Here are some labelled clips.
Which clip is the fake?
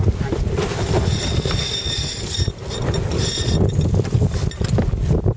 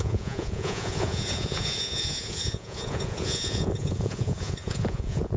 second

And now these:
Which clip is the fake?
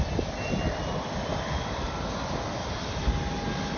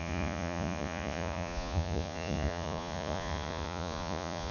second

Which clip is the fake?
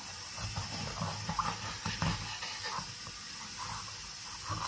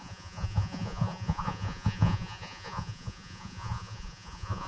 second